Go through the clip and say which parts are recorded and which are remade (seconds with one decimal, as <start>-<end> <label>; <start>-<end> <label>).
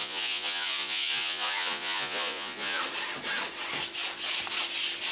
0.0-2.8 remade; 2.8-5.1 recorded